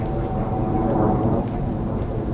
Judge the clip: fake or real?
real